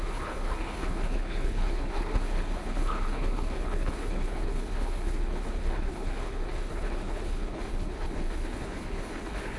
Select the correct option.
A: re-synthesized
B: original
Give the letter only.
A